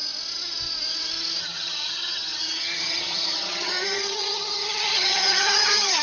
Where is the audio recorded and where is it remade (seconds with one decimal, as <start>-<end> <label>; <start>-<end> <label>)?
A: 0.0-1.4 recorded; 1.4-6.0 remade